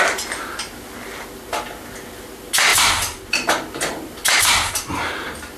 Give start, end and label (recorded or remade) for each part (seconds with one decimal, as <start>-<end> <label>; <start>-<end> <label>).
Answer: 0.0-5.6 recorded